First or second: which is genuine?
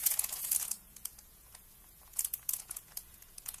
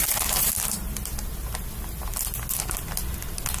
second